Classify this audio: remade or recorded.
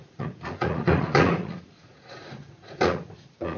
remade